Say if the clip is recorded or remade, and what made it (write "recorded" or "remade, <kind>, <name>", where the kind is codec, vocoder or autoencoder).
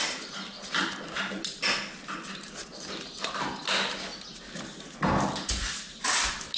recorded